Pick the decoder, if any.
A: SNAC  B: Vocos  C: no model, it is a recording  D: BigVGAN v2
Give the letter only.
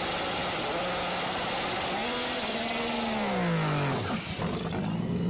C